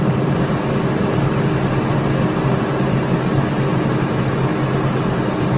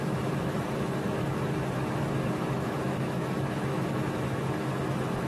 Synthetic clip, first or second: second